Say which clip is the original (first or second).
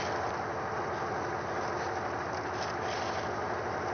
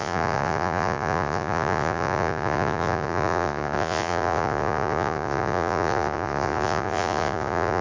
first